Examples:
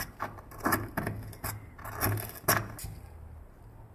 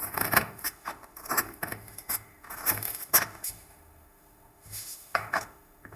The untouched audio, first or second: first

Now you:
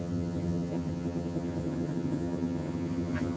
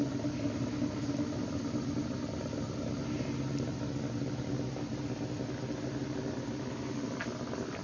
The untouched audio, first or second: second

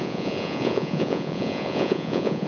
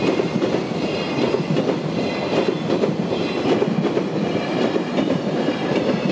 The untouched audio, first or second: second